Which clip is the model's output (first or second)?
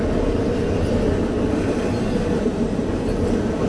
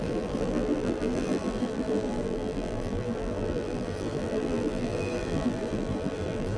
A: second